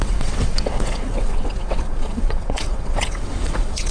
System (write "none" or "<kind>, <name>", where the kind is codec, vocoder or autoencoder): vocoder, WaveNeXt